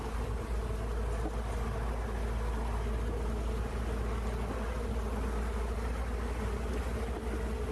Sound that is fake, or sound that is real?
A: real